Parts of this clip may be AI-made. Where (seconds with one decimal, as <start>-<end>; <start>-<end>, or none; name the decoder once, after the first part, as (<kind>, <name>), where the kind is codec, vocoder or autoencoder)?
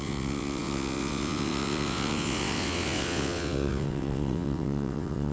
0.0-5.3 (vocoder, WaveNeXt)